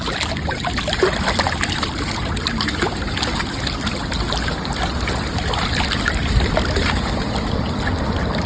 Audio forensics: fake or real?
real